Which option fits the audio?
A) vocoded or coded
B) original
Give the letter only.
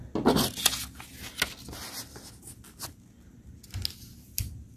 B